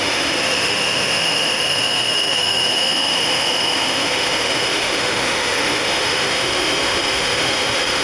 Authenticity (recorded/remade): remade